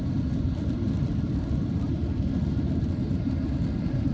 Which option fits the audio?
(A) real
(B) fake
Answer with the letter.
A